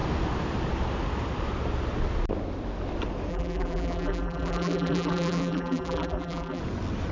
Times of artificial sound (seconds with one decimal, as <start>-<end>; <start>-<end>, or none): 3.3-6.6